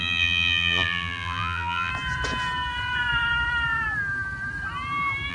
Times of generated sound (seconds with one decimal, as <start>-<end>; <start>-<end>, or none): 0.0-1.9